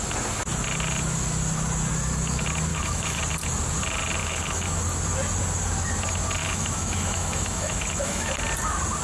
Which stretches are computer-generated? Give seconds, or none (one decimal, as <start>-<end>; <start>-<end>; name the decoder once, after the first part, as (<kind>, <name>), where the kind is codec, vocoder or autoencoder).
2.7-3.2 (autoencoder, DAC-VAE); 4.2-4.8; 6.4-8.3